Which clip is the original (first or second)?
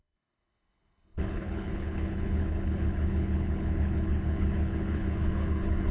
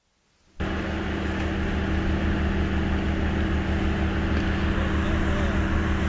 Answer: second